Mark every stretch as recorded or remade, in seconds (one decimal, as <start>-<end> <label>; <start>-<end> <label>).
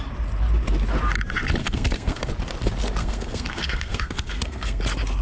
0.0-1.6 recorded; 1.6-2.3 remade; 2.3-3.0 recorded; 3.0-4.8 remade; 4.8-5.2 recorded